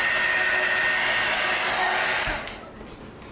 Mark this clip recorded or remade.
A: recorded